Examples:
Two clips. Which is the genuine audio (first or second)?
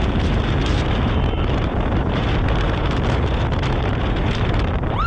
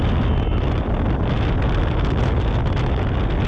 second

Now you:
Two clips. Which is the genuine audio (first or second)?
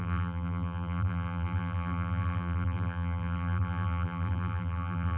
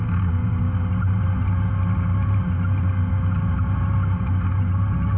second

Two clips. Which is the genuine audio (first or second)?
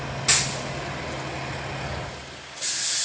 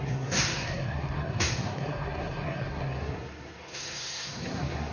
first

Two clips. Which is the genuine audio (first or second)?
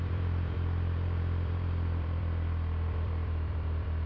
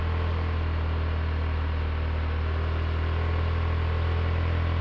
second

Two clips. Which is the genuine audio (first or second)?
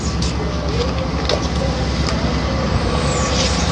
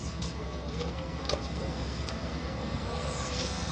first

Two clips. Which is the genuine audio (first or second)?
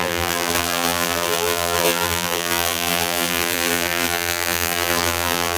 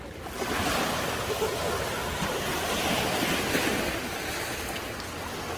second